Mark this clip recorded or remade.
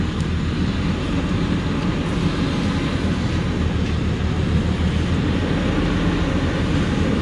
recorded